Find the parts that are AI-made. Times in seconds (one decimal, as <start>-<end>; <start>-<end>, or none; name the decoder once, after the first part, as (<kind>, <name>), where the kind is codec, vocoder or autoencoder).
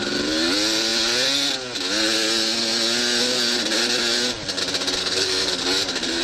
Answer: 5.0-5.6 (codec, SNAC)